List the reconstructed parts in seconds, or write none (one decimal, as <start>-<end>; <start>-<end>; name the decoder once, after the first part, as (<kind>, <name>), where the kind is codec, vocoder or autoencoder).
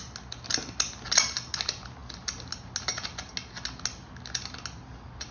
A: none